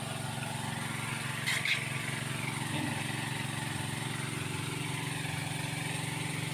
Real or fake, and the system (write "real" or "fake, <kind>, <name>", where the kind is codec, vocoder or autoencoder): real